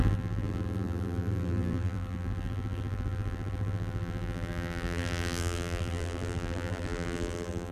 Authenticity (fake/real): fake